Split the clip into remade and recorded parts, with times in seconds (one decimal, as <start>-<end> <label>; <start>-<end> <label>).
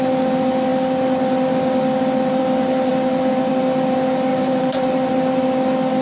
0.0-4.3 recorded; 4.3-4.9 remade; 4.9-6.0 recorded